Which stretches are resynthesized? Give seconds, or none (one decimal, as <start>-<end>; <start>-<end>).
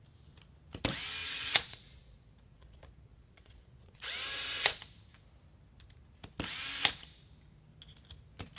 1.2-4.8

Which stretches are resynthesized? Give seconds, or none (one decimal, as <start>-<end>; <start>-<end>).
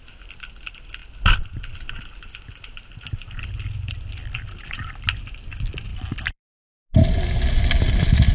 none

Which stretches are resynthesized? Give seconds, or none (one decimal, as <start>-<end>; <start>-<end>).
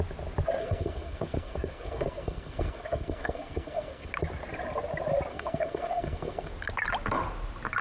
0.6-4.1; 5.3-6.5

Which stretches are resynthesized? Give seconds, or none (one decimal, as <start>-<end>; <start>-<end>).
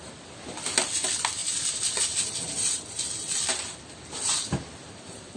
none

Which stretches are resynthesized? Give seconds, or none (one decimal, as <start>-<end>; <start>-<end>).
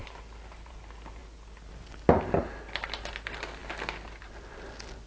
none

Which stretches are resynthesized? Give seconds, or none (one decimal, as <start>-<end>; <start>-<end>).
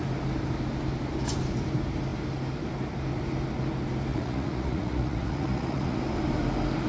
4.1-6.0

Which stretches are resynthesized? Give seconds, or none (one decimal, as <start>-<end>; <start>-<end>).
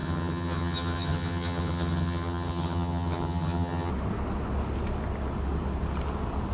0.0-3.9